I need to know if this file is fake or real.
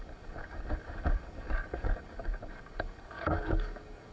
fake